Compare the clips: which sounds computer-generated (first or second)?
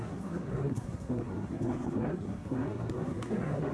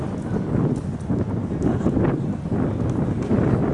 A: first